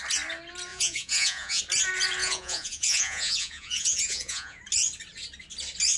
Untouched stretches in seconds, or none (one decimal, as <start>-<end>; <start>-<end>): 0.0-0.7; 1.6-2.2; 4.6-6.0